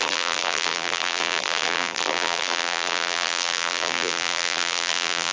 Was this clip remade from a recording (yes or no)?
yes